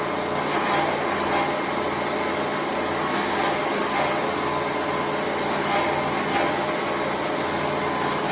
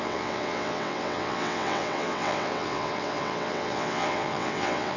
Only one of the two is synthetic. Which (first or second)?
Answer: second